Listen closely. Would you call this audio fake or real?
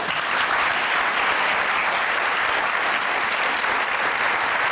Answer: real